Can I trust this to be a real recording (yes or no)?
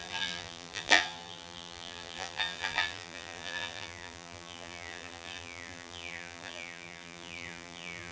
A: no